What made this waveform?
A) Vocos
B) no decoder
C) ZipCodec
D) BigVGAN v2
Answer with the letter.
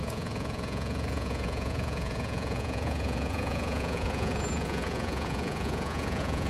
A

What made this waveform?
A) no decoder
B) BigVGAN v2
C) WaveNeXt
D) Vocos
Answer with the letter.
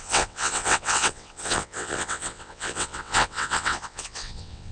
C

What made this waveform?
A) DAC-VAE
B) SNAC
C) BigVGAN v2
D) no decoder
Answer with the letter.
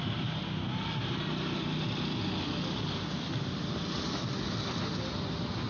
D